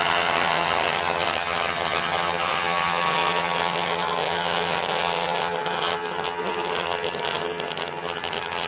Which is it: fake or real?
fake